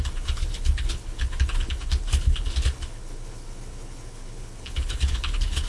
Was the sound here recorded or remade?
remade